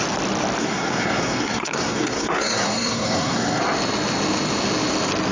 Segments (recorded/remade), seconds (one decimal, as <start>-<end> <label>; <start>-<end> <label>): 0.0-0.6 recorded; 0.6-3.6 remade; 3.6-5.3 recorded